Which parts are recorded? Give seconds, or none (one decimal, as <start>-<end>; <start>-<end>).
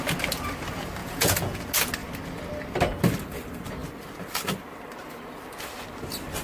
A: 0.0-1.0; 1.6-6.4